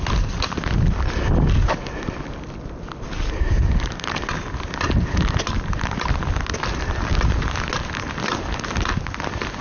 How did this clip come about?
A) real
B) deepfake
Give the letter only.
A